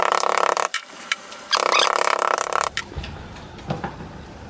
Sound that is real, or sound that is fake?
fake